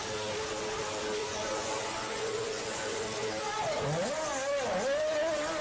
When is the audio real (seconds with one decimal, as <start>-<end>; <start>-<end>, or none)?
0.0-1.2; 3.3-5.6

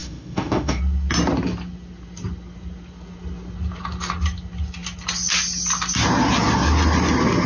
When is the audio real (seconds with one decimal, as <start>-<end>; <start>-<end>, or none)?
0.8-7.5

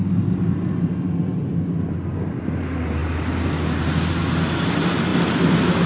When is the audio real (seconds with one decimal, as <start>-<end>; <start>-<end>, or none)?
0.0-5.9

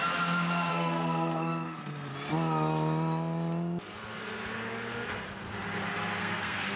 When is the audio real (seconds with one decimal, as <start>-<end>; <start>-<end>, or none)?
0.0-0.7; 2.1-6.2